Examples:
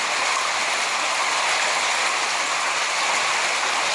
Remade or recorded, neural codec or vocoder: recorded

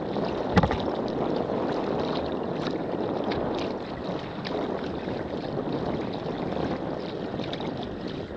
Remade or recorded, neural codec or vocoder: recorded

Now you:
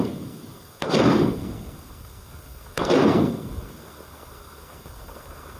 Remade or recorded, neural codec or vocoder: remade, codec, SNAC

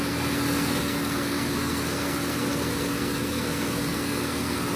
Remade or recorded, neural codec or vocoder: remade, codec, SNAC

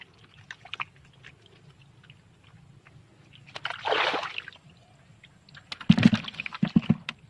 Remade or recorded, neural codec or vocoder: recorded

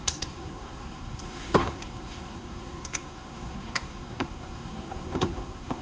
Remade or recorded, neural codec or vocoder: remade, codec, SNAC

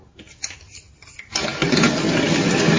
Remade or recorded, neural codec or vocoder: recorded